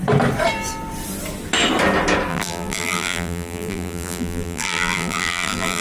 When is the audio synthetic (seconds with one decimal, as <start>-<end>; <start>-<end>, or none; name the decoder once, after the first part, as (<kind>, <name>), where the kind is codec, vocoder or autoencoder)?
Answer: 2.3-5.8 (vocoder, BigVGAN v2)